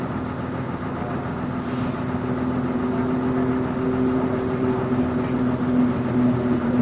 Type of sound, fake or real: real